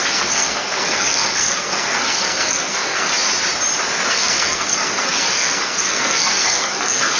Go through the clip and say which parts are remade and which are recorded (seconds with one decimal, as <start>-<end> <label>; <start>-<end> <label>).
0.0-3.1 remade; 3.1-4.1 recorded; 4.1-7.2 remade